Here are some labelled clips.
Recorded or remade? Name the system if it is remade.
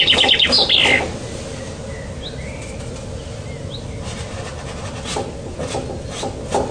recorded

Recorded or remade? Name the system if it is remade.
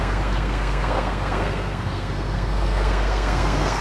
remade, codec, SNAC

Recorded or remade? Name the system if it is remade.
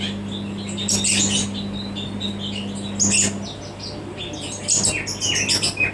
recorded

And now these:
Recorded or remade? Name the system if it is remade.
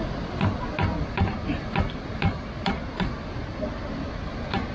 recorded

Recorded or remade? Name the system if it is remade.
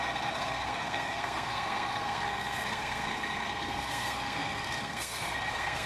remade, codec, SNAC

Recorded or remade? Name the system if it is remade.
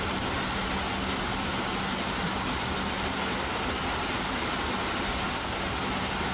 recorded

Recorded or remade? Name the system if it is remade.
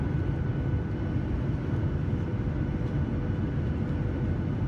recorded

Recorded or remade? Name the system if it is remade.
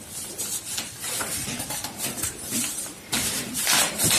remade, vocoder, BigVGAN v2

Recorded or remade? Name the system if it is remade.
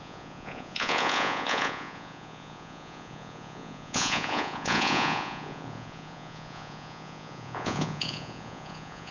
remade, vocoder, Vocos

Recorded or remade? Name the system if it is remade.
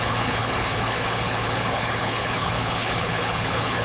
remade, codec, HILCodec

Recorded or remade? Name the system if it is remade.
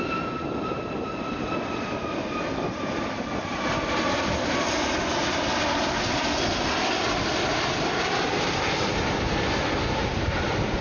recorded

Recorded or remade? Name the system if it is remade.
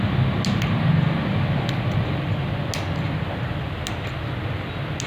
recorded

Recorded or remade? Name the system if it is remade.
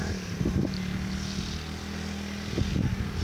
recorded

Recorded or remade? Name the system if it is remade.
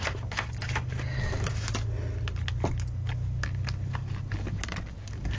recorded